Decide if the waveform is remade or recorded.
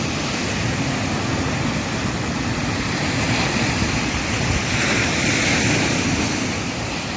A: remade